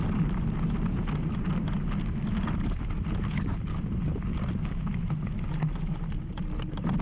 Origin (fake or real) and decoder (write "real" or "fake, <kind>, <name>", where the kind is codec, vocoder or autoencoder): real